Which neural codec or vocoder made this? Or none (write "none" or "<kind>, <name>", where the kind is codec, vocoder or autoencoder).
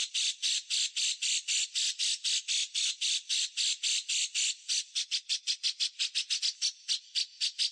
none